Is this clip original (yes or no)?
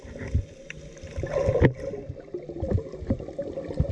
yes